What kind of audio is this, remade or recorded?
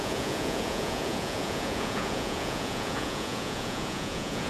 remade